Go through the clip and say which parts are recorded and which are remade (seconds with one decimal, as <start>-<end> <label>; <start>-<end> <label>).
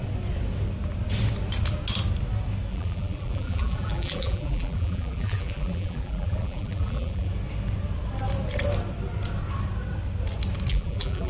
0.0-2.7 recorded; 2.7-7.3 remade; 7.3-10.7 recorded; 10.7-11.3 remade